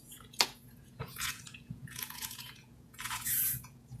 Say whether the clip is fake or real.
fake